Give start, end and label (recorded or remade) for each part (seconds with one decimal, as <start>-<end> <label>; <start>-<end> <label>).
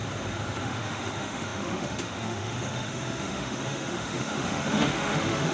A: 0.0-0.6 recorded; 0.6-5.5 remade